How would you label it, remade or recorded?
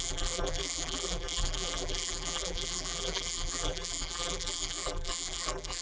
remade